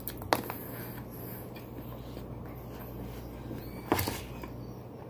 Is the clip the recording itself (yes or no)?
yes